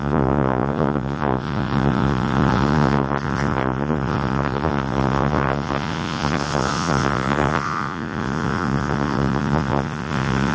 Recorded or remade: remade